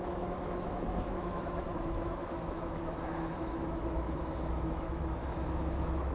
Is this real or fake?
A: fake